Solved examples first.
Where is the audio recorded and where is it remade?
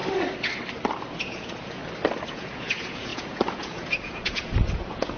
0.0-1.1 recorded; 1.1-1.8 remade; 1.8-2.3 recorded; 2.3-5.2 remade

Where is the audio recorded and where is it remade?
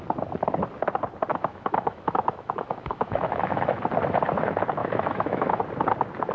0.0-1.3 recorded; 1.3-3.7 remade; 3.7-4.8 recorded; 4.8-5.6 remade; 5.6-6.3 recorded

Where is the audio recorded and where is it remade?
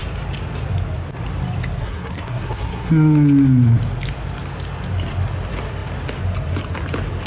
0.0-1.8 recorded; 1.8-2.9 remade; 2.9-7.3 recorded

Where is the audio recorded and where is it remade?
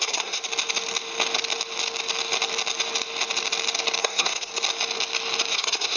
0.0-0.4 remade; 0.4-4.0 recorded; 4.0-4.5 remade; 4.5-5.5 recorded; 5.5-6.0 remade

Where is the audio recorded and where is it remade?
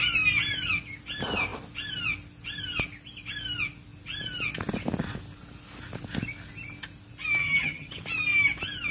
0.0-7.4 recorded; 7.4-7.9 remade; 7.9-8.9 recorded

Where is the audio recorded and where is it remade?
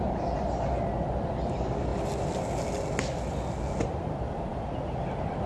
0.0-1.9 recorded; 1.9-3.6 remade; 3.6-5.5 recorded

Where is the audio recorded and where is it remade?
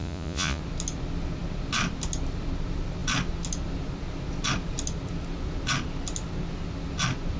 0.0-0.6 remade; 0.6-7.4 recorded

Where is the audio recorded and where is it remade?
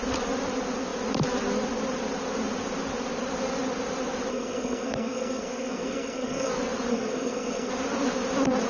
0.0-4.3 recorded; 4.3-6.5 remade; 6.5-6.9 recorded; 6.9-7.7 remade; 7.7-8.7 recorded